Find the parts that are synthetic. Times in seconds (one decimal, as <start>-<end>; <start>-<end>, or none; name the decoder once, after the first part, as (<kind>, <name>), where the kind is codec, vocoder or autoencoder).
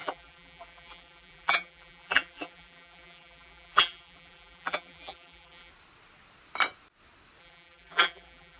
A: 0.0-5.7 (vocoder, BigVGAN v2); 7.4-8.6